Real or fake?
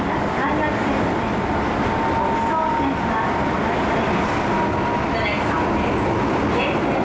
real